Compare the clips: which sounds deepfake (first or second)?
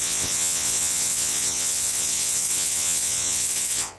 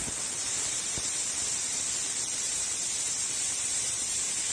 first